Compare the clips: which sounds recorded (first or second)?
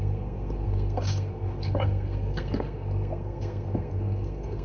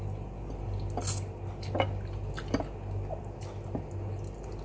second